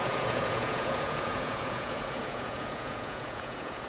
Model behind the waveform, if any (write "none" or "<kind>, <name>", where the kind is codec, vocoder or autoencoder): vocoder, Vocos